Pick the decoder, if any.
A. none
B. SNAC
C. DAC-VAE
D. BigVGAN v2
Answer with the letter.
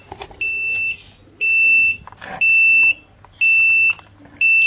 A